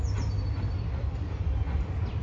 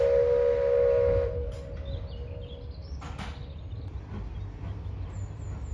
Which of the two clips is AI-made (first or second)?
first